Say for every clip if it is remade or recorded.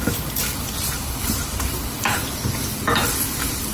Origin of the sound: recorded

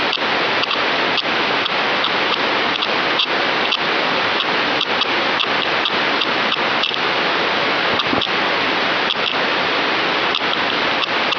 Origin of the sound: recorded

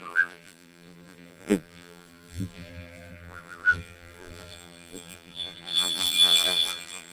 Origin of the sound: remade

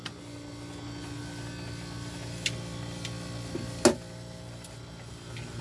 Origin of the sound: recorded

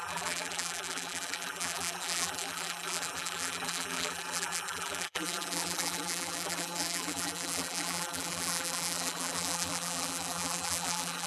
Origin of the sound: remade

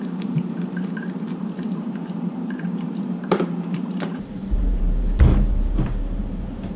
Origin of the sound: remade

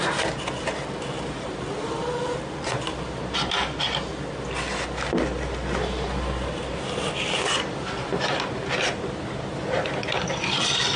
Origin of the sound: remade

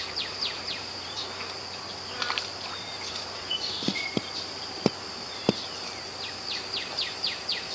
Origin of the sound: remade